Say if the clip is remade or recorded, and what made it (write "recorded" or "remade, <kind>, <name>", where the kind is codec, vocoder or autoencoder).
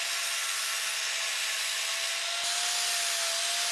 recorded